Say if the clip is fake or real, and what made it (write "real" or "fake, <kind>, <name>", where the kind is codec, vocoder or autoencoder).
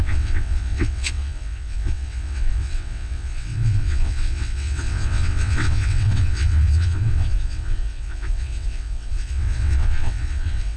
fake, vocoder, WaveNeXt